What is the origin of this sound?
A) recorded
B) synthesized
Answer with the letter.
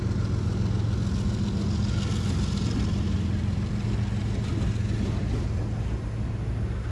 A